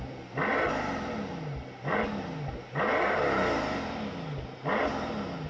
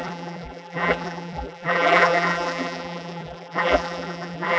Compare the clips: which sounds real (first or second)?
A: first